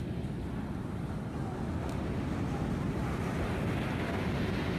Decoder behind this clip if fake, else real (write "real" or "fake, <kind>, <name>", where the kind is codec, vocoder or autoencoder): real